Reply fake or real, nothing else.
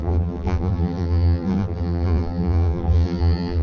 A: fake